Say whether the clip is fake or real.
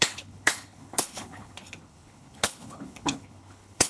fake